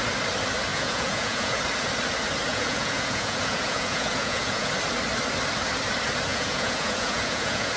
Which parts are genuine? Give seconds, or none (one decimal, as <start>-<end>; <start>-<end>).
0.0-0.7; 1.6-2.5; 4.7-6.3